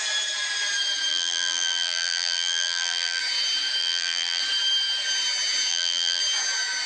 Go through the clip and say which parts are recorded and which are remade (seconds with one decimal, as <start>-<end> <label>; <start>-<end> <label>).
0.0-1.1 recorded; 1.1-3.2 remade; 3.2-3.8 recorded; 3.8-4.4 remade; 4.4-5.7 recorded; 5.7-6.2 remade; 6.2-6.9 recorded